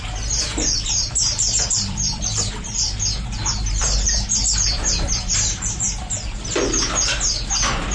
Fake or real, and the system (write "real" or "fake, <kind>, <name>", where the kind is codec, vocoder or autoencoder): fake, vocoder, BigVGAN v2